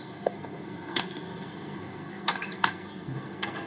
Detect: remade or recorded remade